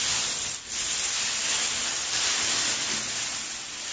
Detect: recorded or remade recorded